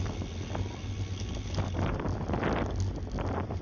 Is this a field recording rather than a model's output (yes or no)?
yes